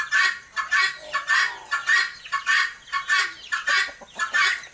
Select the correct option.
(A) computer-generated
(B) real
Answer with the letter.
B